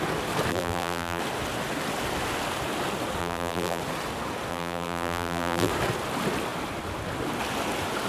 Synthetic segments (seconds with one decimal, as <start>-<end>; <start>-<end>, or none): 0.5-1.2; 3.2-3.8; 4.5-5.7